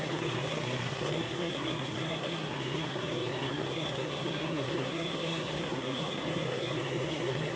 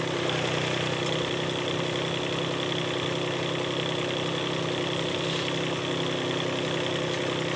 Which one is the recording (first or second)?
second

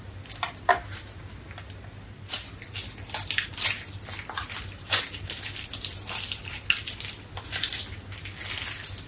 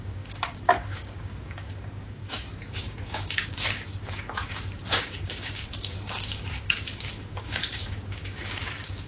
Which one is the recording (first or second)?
first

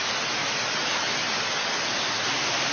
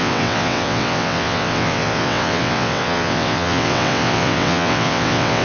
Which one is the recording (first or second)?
first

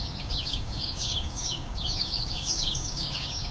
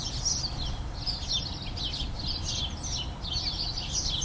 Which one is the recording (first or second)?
second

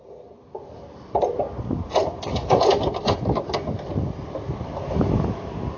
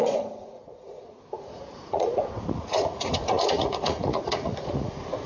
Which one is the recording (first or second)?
first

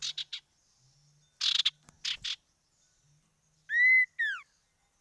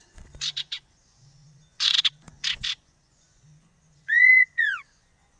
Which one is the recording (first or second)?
first